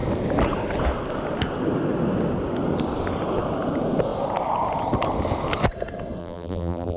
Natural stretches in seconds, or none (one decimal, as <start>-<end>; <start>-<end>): 0.0-6.2

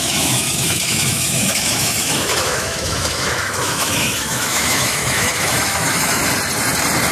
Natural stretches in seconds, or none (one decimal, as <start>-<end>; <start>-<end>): 6.2-7.1

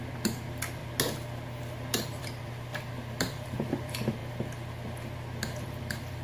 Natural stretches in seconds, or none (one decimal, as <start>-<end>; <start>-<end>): 0.8-1.6; 4.2-5.6

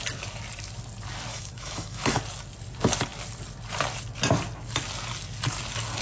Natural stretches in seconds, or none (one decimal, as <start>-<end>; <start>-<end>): 0.0-1.3; 2.2-6.0